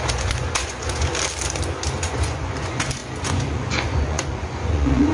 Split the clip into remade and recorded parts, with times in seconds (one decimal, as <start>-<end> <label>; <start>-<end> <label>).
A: 0.0-1.1 remade; 1.1-2.1 recorded; 2.1-5.1 remade